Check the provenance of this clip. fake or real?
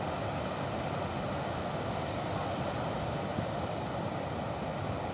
real